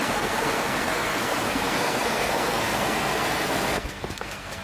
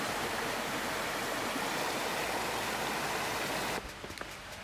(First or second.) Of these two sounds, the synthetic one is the first